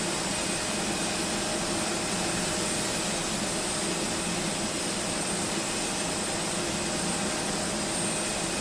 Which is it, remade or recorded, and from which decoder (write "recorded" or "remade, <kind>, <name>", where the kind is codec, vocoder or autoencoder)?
recorded